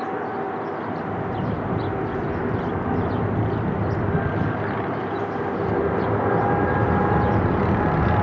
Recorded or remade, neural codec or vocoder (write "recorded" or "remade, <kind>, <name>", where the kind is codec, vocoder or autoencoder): recorded